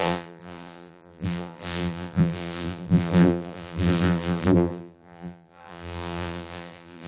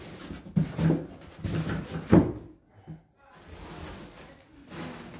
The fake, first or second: first